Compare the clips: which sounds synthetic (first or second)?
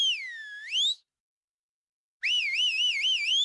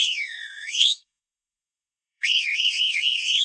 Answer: second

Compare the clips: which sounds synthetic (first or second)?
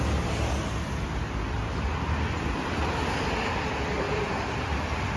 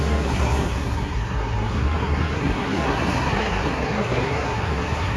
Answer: second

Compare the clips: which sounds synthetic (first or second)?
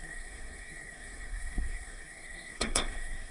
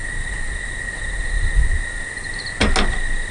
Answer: first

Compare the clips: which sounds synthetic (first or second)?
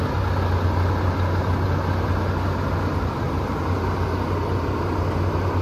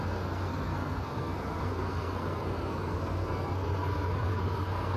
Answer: second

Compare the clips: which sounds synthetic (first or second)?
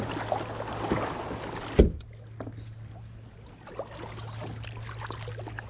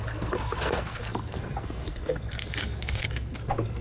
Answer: second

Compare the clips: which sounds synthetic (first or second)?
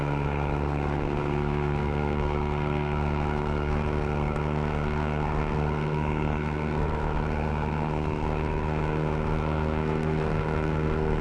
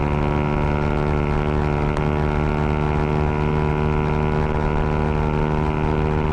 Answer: first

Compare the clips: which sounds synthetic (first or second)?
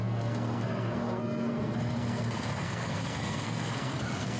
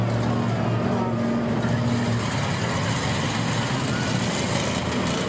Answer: first